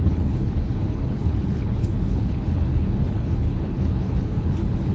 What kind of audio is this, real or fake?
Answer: fake